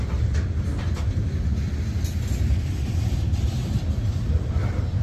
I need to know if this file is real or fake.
real